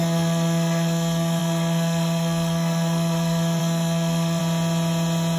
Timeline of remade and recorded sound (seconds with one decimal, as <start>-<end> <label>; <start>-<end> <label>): 0.0-4.4 remade; 4.4-5.4 recorded